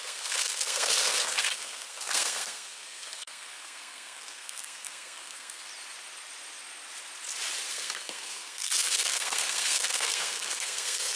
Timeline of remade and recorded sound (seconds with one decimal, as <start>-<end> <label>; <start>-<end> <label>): 0.0-5.7 remade; 5.7-7.7 recorded; 7.7-11.2 remade